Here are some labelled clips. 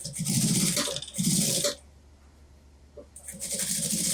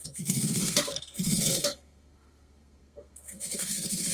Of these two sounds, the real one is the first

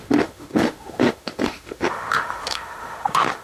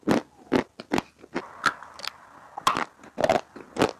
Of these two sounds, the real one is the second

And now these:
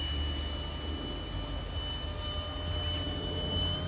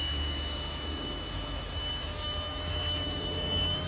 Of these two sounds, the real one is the first